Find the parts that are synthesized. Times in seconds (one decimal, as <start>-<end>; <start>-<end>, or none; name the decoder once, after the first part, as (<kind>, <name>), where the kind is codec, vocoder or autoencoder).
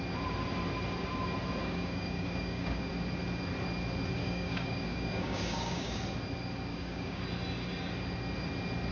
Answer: 1.6-2.9 (codec, DAC); 4.2-6.0; 6.7-7.2